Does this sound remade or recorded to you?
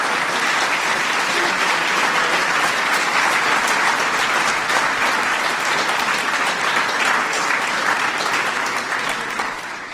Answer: recorded